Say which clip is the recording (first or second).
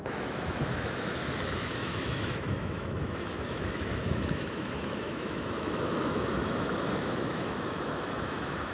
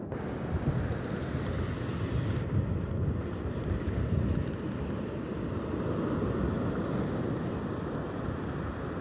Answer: second